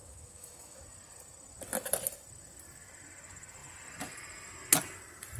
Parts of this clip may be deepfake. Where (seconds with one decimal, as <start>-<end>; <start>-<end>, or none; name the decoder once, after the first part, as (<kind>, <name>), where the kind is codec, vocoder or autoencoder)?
0.0-0.8 (autoencoder, DAC-VAE)